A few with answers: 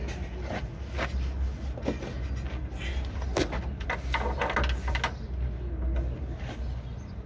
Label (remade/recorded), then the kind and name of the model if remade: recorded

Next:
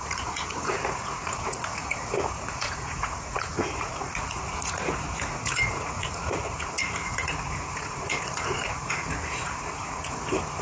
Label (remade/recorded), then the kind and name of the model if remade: remade, vocoder, Vocos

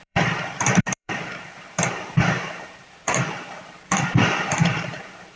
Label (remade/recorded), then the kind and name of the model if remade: remade, vocoder, BigVGAN v2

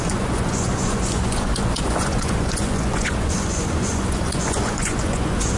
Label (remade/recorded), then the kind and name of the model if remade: remade, vocoder, Vocos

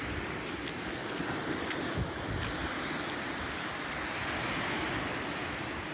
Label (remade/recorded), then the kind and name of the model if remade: recorded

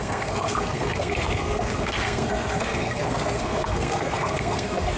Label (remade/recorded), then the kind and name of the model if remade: remade, codec, SNAC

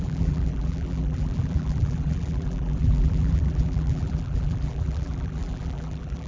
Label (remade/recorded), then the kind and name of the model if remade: remade, vocoder, BigVGAN v2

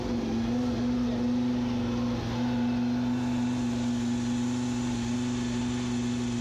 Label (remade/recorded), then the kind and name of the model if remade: recorded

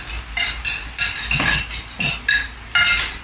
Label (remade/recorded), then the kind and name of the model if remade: recorded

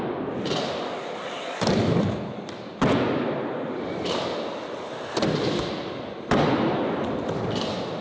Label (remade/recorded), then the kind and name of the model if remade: recorded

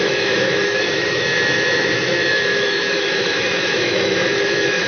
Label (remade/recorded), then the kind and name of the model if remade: remade, autoencoder, DAC-VAE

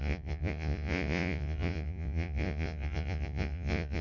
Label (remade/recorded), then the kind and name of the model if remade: remade, vocoder, Vocos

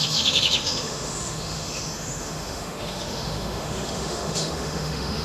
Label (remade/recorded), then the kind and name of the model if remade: remade, autoencoder, DAC-VAE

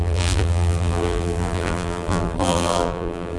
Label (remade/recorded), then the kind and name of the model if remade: remade, vocoder, BigVGAN v2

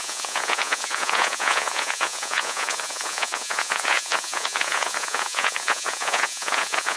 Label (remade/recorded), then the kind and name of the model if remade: remade, vocoder, Vocos